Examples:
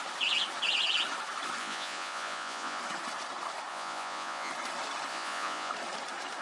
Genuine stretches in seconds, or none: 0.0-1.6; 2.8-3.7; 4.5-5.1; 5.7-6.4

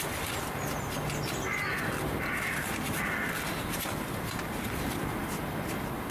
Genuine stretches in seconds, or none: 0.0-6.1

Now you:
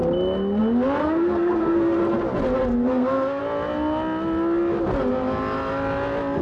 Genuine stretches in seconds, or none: 0.0-1.0; 2.0-2.7; 3.4-6.4

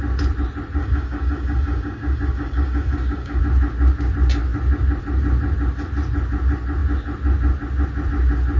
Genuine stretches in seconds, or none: 0.0-0.8; 3.4-8.6